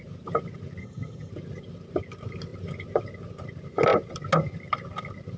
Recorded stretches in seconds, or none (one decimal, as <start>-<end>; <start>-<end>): 0.0-0.8; 1.3-5.4